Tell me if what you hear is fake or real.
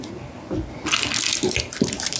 real